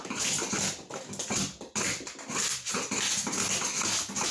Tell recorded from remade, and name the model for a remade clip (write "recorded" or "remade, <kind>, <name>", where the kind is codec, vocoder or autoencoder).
recorded